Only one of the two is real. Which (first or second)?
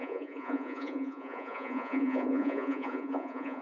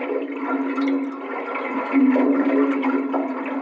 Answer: second